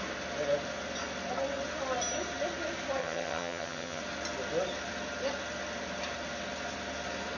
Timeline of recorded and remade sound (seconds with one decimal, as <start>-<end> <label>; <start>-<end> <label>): 0.0-3.0 recorded; 3.0-4.0 remade; 4.0-7.4 recorded